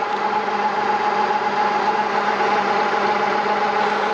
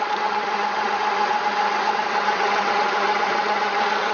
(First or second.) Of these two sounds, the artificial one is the second